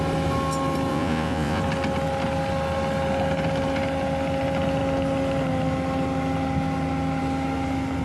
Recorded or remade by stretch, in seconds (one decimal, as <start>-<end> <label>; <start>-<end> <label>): 0.0-0.9 recorded; 0.9-1.6 remade; 1.6-8.0 recorded